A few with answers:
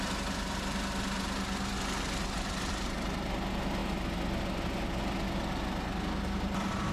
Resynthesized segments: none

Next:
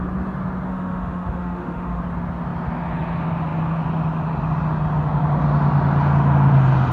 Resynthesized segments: 0.7-2.0 (autoencoder, DAC-VAE)

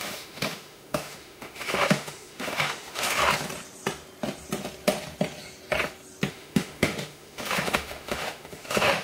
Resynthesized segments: 0.0-3.2 (autoencoder, DAC-VAE); 6.3-9.0

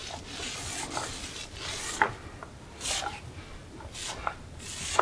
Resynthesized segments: none

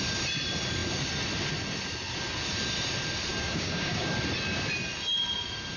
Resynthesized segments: 3.3-4.1 (codec, DAC)